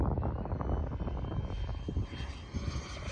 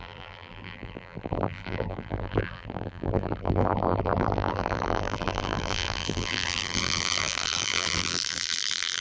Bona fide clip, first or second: first